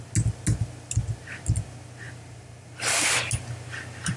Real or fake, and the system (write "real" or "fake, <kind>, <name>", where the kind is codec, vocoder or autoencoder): real